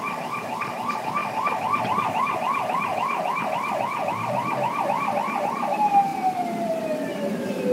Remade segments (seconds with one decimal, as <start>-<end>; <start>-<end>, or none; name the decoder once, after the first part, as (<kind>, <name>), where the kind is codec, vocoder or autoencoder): 0.0-1.2 (vocoder, BigVGAN v2); 1.8-2.9; 4.1-7.7

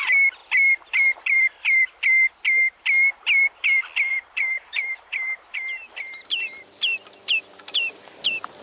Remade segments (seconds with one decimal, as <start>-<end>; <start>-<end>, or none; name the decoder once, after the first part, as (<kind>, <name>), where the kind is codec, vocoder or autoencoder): 4.1-8.1 (vocoder, BigVGAN v2)

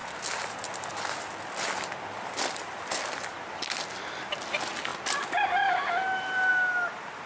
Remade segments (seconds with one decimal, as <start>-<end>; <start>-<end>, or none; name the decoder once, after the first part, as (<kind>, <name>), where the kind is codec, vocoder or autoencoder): none

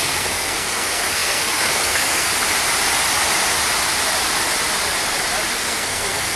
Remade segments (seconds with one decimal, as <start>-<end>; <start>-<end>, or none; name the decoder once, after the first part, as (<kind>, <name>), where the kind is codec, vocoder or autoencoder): 0.0-2.3 (codec, SNAC); 5.5-6.4

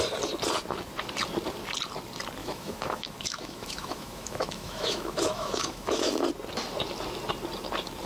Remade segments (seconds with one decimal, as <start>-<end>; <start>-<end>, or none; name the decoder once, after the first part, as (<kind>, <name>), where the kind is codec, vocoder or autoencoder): 2.4-6.1 (autoencoder, DAC-VAE)

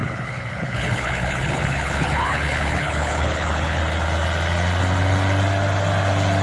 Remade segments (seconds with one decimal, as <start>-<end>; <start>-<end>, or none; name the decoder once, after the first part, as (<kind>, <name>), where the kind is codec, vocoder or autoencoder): 0.0-3.8 (codec, HILCodec)

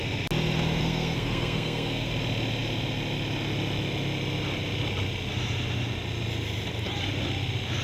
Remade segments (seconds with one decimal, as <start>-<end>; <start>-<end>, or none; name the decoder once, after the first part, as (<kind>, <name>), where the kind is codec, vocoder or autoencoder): 0.8-2.1 (codec, SNAC)

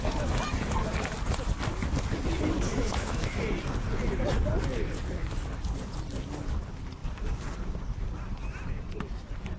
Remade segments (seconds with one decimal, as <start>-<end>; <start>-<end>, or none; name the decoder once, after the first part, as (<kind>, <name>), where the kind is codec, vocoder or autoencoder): 2.7-3.4 (autoencoder, DAC-VAE)